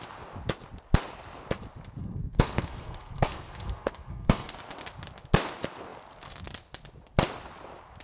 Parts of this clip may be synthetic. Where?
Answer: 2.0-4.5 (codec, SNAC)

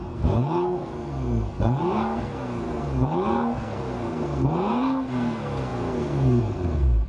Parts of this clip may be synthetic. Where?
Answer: 0.0-7.1 (codec, SNAC)

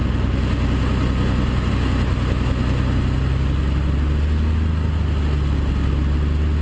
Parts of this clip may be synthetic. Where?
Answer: none

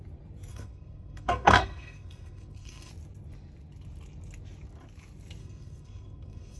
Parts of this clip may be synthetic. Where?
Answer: 0.5-2.9 (codec, SNAC); 5.4-6.6

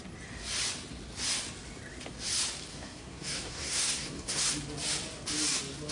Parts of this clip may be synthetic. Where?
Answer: 2.7-4.5 (codec, SNAC)

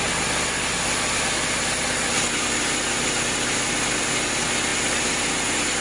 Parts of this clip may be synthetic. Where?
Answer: none

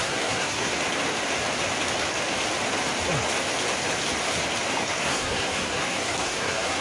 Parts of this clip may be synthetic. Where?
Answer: 0.0-0.7 (codec, SNAC); 4.8-6.8